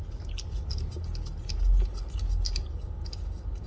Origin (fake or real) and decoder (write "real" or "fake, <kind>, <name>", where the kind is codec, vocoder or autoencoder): real